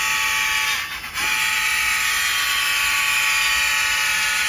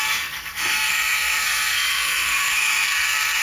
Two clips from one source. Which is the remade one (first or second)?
second